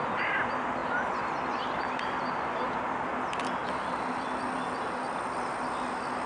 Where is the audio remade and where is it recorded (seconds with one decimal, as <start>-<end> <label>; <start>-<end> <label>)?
0.0-6.3 recorded